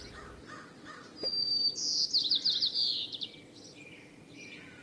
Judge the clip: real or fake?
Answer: real